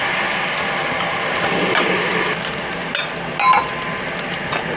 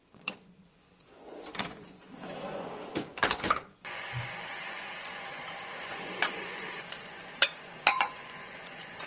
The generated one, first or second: second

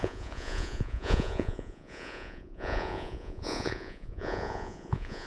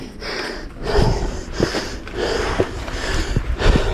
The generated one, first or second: first